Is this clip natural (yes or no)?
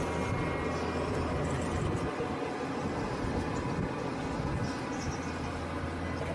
yes